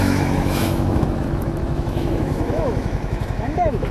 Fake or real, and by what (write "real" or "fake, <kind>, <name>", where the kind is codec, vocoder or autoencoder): fake, autoencoder, DAC-VAE